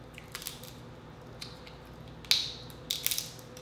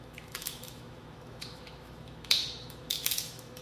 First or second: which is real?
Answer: first